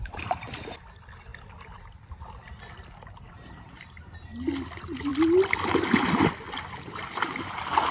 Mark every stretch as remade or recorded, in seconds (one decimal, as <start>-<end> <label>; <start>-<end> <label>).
0.0-7.9 recorded